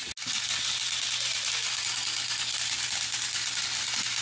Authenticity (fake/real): real